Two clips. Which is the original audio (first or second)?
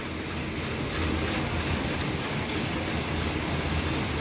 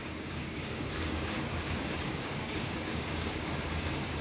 first